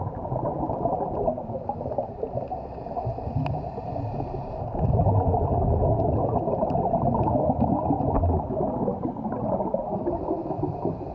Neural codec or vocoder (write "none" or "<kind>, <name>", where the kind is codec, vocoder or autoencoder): none